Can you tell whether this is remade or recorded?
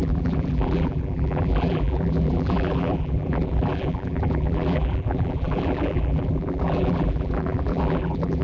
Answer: remade